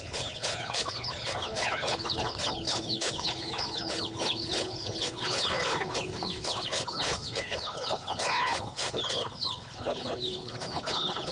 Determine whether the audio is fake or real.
fake